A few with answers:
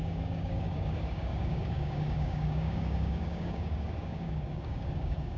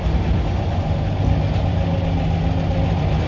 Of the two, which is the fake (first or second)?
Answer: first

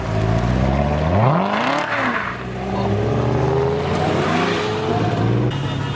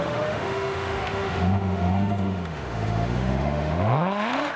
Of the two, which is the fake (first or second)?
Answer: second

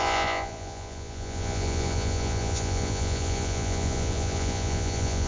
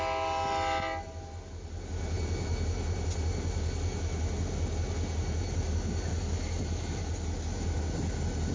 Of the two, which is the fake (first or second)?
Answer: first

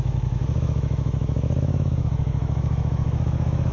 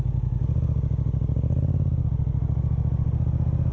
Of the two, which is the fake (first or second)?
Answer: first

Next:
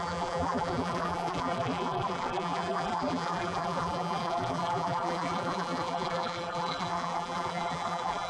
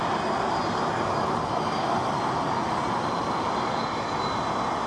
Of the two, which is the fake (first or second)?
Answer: first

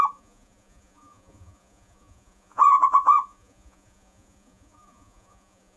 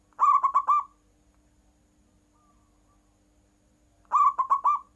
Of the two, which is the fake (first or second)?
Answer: first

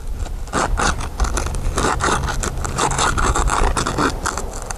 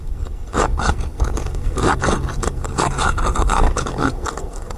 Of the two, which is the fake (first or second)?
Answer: second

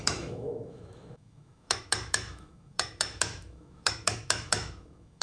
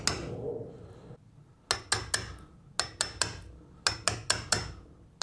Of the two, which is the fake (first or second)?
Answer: first